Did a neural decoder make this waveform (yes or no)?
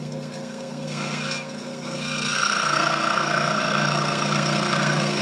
yes